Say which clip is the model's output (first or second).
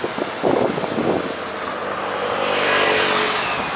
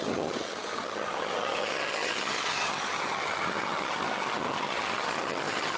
second